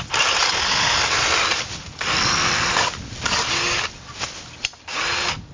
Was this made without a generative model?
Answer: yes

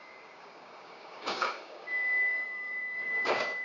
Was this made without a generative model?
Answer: no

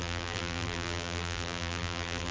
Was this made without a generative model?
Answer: no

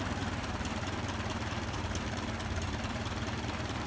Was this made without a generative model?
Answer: no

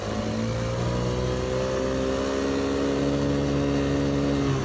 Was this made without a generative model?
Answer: yes